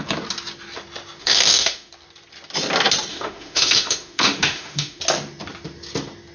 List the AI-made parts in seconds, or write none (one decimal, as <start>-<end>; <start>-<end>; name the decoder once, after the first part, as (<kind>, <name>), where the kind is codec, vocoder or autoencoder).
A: 1.2-1.9 (autoencoder, DAC-VAE); 3.1-5.0

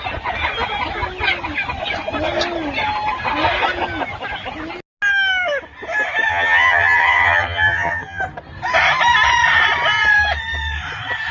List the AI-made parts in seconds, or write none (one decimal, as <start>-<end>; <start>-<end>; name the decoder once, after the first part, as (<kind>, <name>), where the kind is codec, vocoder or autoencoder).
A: 6.3-8.2 (vocoder, HiFi-GAN)

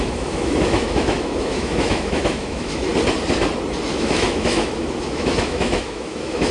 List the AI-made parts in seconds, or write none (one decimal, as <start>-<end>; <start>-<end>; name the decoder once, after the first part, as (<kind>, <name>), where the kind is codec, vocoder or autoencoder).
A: 0.0-2.9 (autoencoder, DAC-VAE); 3.9-6.5

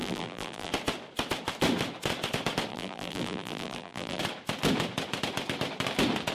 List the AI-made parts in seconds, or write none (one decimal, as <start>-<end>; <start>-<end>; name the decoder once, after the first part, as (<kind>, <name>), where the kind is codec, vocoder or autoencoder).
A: 0.0-0.7 (vocoder, BigVGAN v2); 2.7-4.2

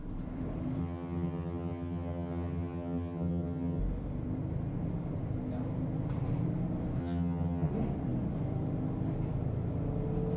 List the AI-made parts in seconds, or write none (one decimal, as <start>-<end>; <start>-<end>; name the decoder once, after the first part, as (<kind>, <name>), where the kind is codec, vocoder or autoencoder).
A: 0.8-3.8 (vocoder, HiFi-GAN); 7.0-7.7

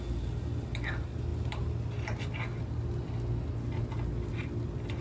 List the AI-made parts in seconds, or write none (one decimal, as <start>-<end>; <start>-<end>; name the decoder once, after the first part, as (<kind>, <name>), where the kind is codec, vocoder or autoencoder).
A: none